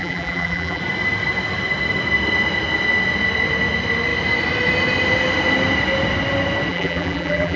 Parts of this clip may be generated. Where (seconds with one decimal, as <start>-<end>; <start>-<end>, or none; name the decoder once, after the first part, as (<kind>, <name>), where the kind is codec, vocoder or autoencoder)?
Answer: 0.0-0.8 (vocoder, BigVGAN v2); 6.7-7.6